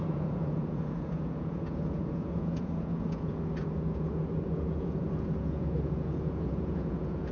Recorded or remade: remade